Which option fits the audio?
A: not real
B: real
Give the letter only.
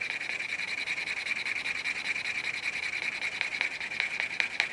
B